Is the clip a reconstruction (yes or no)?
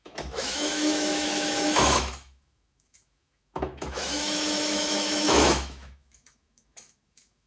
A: yes